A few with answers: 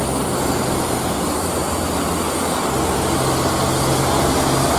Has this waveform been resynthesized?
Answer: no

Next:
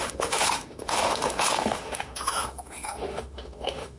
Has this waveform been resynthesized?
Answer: yes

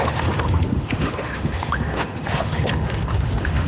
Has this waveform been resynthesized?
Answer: yes